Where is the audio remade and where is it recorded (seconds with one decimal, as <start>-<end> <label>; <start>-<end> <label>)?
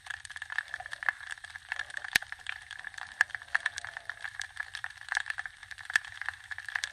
0.0-5.6 remade; 5.6-6.9 recorded